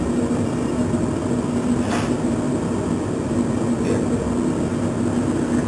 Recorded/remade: recorded